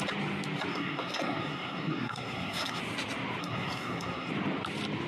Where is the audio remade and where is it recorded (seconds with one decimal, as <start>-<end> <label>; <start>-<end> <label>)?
0.0-0.7 recorded; 0.7-2.8 remade; 2.8-3.4 recorded; 3.4-4.3 remade; 4.3-5.1 recorded